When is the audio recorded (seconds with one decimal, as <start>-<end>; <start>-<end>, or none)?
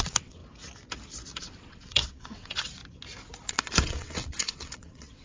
0.4-1.4; 2.8-3.5